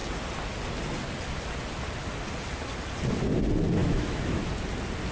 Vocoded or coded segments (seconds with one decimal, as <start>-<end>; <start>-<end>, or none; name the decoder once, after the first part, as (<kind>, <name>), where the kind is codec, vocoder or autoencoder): 3.8-4.4 (autoencoder, DAC-VAE)